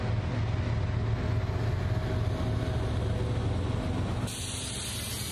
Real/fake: real